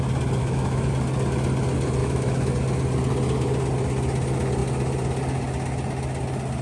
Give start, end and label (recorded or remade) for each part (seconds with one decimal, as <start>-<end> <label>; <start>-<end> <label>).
0.0-0.4 recorded; 0.4-0.9 remade; 0.9-2.0 recorded; 2.0-2.5 remade; 2.5-6.6 recorded